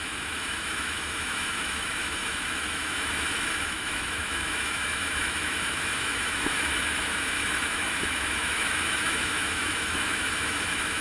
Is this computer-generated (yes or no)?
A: yes